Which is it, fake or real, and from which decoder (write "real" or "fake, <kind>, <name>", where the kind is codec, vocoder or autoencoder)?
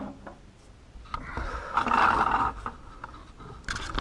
real